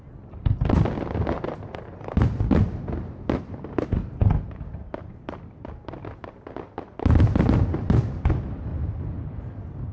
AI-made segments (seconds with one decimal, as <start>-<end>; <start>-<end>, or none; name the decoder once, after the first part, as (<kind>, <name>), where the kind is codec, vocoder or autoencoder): 4.2-5.9 (vocoder, BigVGAN v2); 8.7-9.4